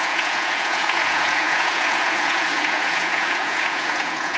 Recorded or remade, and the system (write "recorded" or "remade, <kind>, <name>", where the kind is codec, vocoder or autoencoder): remade, vocoder, Vocos